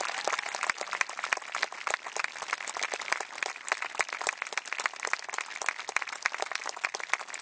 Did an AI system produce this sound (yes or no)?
no